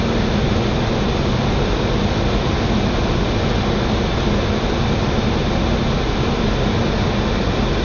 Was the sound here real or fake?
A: real